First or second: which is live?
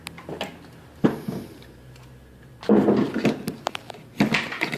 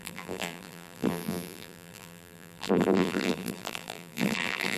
first